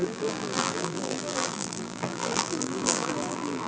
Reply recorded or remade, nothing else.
remade